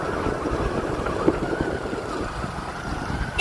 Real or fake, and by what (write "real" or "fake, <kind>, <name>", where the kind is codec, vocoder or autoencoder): fake, vocoder, BigVGAN v2